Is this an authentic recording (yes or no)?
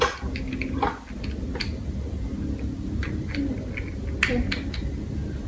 yes